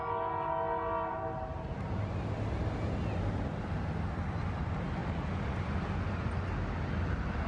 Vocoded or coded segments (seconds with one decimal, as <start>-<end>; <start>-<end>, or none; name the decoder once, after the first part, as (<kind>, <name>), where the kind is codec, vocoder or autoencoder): none